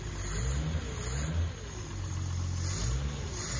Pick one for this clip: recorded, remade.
recorded